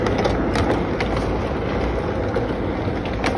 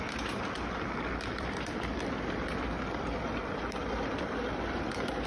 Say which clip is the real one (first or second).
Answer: first